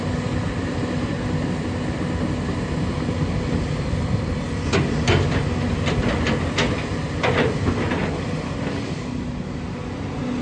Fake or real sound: real